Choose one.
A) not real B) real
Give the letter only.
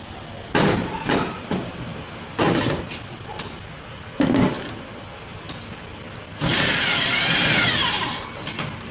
B